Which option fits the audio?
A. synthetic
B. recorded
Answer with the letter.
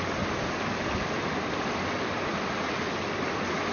B